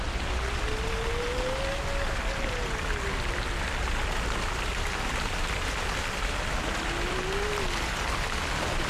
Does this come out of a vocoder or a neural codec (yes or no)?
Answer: no